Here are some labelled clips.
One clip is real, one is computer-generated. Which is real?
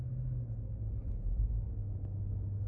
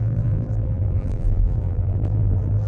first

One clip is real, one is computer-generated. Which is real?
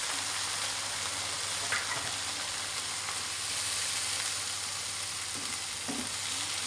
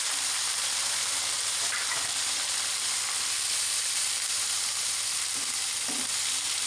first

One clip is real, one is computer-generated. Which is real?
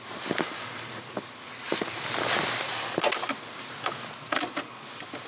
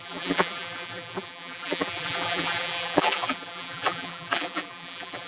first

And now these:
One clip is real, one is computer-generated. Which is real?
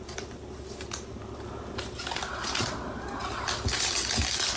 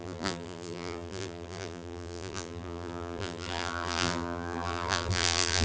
first